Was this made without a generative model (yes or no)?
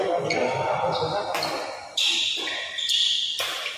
yes